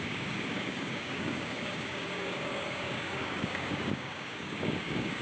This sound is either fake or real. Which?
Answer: fake